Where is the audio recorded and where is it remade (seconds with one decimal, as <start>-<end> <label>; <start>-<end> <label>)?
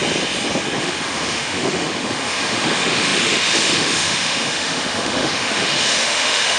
0.0-0.8 recorded; 0.8-6.6 remade